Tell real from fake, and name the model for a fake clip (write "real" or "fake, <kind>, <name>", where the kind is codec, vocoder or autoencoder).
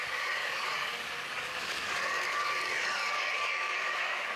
fake, codec, DAC